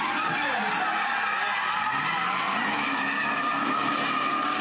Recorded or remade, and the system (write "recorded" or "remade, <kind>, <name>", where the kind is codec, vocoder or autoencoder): recorded